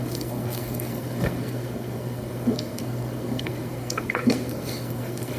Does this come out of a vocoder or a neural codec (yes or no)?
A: yes